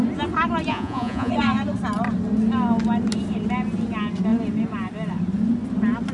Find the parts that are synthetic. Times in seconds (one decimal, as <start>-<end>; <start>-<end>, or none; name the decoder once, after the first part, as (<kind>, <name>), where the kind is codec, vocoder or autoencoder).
0.7-1.3 (vocoder, Vocos)